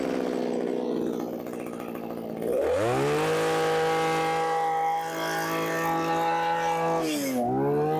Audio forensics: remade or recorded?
recorded